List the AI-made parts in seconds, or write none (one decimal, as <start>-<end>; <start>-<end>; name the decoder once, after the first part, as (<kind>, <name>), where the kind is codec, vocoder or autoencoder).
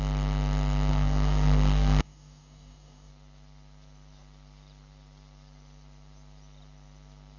0.9-3.1 (codec, DAC)